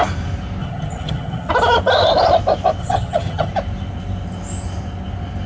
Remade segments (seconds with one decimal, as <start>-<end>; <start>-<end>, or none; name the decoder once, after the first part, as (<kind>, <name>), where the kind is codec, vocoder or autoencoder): 0.6-1.5 (vocoder, HiFi-GAN); 2.8-3.5